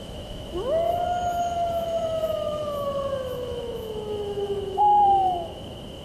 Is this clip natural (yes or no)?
no